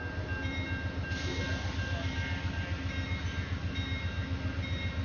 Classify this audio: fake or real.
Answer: real